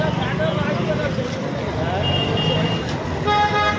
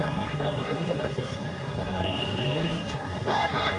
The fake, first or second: second